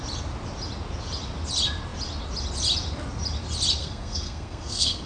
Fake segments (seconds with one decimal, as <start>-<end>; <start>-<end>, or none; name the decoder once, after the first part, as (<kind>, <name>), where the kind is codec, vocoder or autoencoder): 3.8-5.1 (codec, SNAC)